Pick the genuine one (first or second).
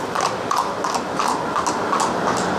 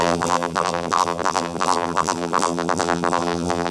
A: first